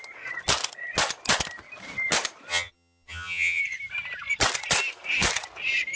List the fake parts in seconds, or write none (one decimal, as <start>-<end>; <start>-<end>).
2.5-3.6